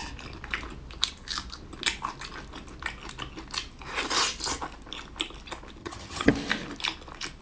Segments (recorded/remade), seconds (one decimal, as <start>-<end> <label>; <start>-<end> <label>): 0.0-5.8 recorded; 5.8-6.3 remade; 6.3-7.4 recorded